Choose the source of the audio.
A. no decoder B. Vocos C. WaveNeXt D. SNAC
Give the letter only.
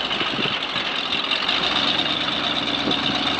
A